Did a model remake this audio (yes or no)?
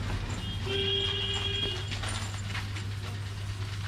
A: no